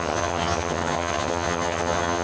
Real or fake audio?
fake